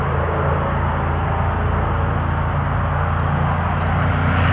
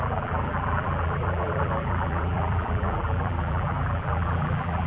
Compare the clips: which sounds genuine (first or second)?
first